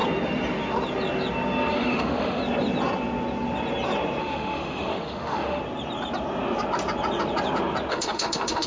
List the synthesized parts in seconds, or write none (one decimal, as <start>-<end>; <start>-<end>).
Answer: 1.7-2.4; 4.2-5.6; 7.9-8.7